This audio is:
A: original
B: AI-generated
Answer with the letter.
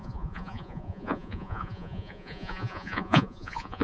B